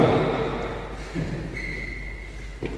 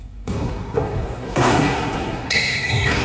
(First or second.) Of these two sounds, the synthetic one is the second